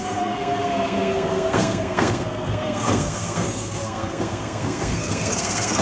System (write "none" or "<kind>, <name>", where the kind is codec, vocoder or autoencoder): codec, SNAC